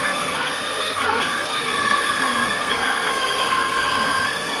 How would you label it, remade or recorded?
remade